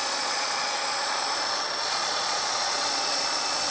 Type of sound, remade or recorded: remade